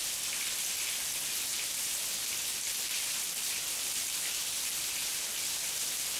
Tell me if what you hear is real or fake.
real